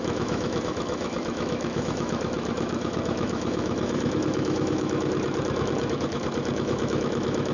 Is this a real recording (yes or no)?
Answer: no